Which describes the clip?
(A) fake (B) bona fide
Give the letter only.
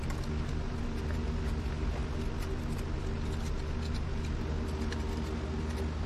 B